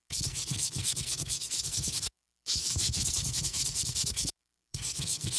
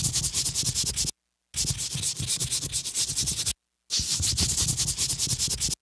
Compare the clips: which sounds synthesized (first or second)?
first